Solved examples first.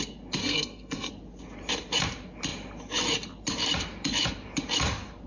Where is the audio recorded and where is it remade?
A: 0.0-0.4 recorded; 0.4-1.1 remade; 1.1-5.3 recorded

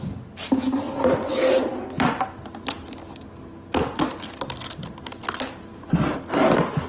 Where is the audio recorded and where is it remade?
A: 0.0-6.9 recorded

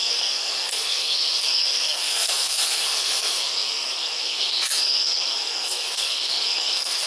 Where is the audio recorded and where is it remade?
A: 0.0-7.1 remade

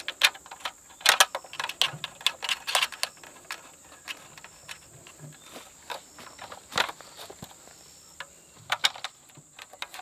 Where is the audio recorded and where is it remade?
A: 0.0-10.0 recorded

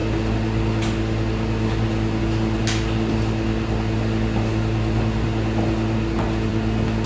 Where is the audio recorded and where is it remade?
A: 0.0-7.1 recorded

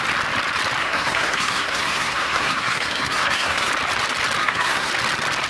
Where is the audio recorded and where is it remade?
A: 0.0-0.8 recorded; 0.8-3.7 remade; 3.7-4.4 recorded; 4.4-4.9 remade; 4.9-5.5 recorded

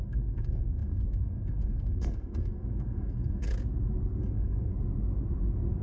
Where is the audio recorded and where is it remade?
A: 0.0-3.5 remade; 3.5-4.2 recorded; 4.2-4.7 remade; 4.7-5.8 recorded